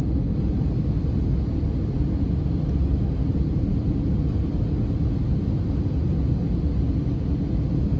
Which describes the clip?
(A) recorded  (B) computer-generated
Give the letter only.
A